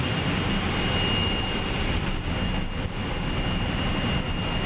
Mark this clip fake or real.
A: real